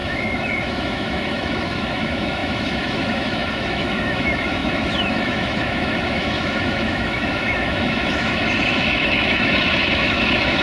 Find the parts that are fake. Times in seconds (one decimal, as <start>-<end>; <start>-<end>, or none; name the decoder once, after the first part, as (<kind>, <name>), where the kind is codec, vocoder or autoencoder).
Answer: 0.0-10.6 (autoencoder, DAC-VAE)